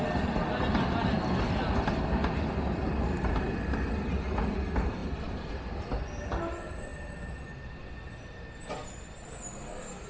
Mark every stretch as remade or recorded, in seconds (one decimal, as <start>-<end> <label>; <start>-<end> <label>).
0.0-5.0 recorded; 5.0-5.5 remade; 5.5-10.1 recorded